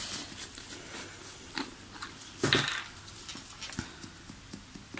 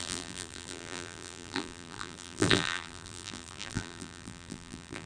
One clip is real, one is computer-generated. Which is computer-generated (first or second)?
second